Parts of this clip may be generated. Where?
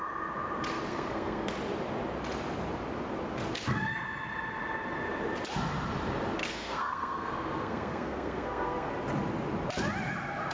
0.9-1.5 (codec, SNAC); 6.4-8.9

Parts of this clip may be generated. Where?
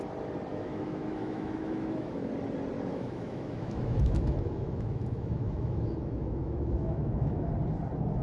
0.5-2.3 (autoencoder, DAC-VAE); 2.9-7.5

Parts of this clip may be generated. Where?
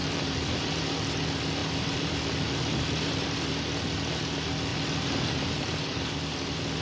0.0-0.8 (vocoder, BigVGAN v2); 1.6-2.1; 4.7-6.2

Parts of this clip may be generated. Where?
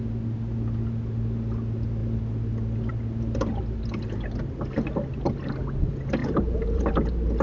6.2-6.9 (vocoder, BigVGAN v2)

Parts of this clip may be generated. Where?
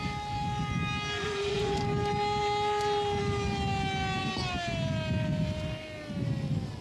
1.2-1.8 (vocoder, Vocos)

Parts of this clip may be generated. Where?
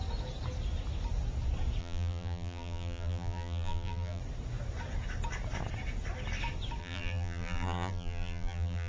1.8-4.2 (vocoder, BigVGAN v2); 6.8-8.9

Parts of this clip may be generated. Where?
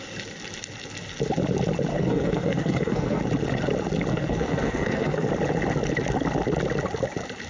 1.9-3.2 (codec, SNAC); 4.1-5.3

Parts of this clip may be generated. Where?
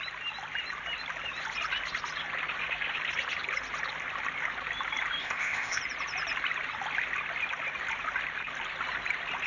5.2-5.8 (codec, ZipCodec)